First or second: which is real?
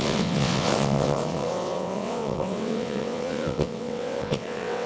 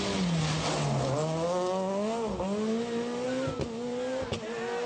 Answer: second